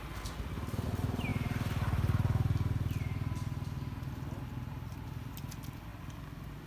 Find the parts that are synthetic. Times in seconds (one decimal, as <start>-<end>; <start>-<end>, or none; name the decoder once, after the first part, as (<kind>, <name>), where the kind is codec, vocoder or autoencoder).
none